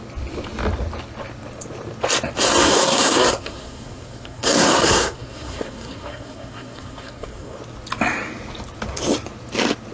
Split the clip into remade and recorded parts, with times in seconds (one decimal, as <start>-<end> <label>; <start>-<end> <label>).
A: 0.0-2.6 recorded; 2.6-7.6 remade; 7.6-9.9 recorded